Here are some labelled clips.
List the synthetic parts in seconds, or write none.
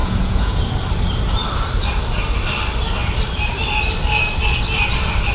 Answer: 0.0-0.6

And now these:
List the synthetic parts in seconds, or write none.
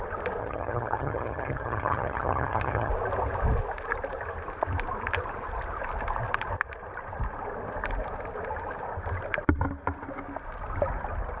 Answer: 0.4-2.9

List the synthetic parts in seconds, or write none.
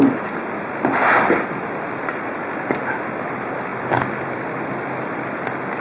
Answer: none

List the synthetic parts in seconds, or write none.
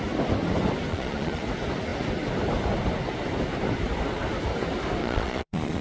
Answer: 0.9-1.4; 5.0-5.8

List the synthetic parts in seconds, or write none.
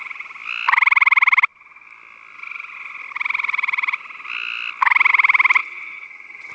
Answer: 5.6-6.5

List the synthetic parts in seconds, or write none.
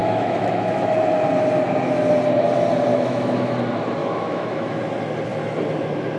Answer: 0.0-0.9; 2.9-3.6; 4.0-4.8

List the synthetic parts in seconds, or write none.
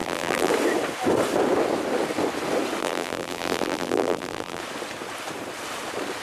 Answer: 0.0-0.5; 2.8-4.6